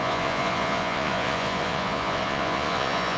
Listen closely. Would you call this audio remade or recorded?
remade